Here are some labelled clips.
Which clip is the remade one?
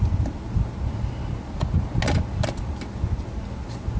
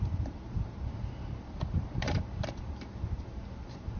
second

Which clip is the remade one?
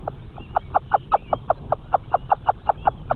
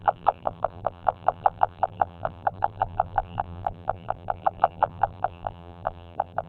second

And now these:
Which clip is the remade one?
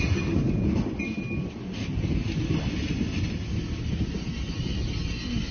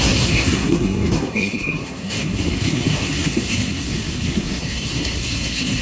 second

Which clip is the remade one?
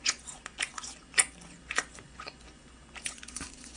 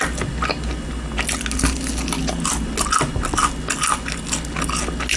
first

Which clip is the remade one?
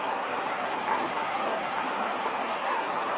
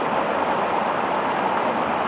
first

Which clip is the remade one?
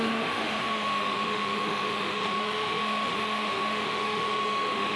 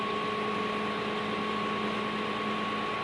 first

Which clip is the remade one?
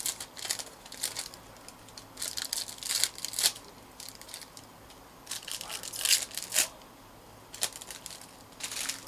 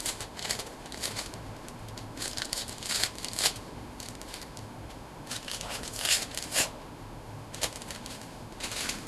second